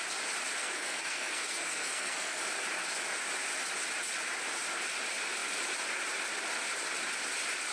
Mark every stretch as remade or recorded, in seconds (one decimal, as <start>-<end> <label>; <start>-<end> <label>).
0.0-0.6 recorded; 0.6-2.4 remade; 2.4-7.7 recorded